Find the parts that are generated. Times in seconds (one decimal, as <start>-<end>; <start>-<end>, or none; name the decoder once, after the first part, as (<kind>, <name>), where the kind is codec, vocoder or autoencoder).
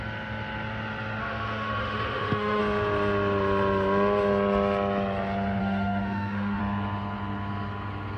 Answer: 1.2-2.6 (autoencoder, DAC-VAE); 5.6-6.6